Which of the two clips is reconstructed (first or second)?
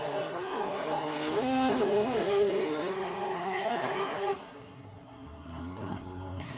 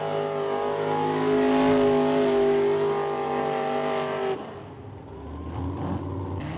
first